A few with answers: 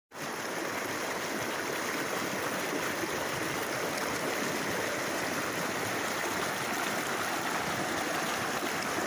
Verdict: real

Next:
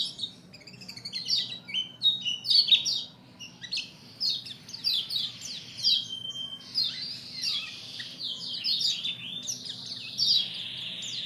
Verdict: real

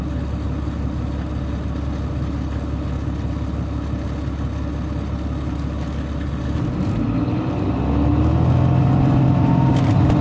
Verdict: real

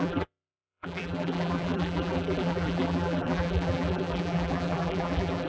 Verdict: fake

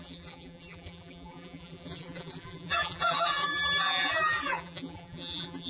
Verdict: fake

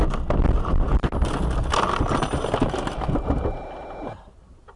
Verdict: real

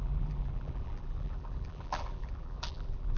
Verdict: fake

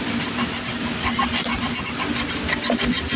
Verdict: real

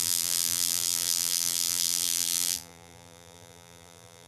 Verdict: fake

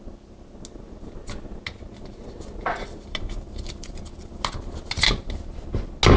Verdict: real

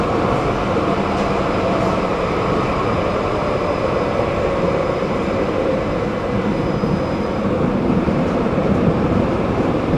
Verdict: fake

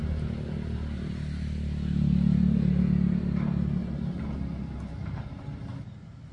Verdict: real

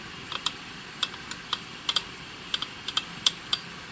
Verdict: fake